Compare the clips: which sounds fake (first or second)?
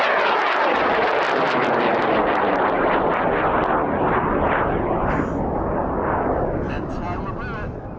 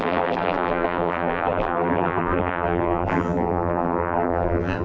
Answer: second